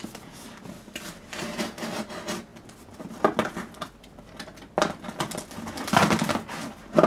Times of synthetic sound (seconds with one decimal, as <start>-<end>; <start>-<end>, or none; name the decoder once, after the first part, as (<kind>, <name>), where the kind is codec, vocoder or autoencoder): none